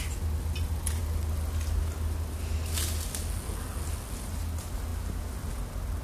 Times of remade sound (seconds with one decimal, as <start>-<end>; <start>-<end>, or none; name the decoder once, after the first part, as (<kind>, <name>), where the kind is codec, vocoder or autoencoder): none